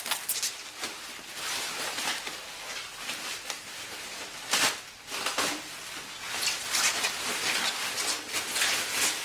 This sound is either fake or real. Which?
real